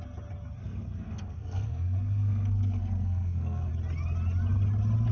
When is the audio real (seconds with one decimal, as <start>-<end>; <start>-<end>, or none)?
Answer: 0.0-0.6; 3.7-5.1